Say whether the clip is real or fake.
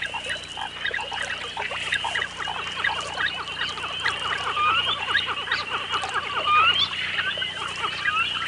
real